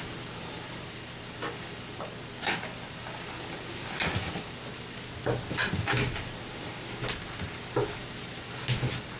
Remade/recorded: recorded